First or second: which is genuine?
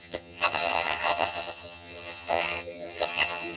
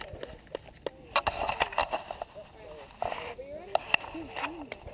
second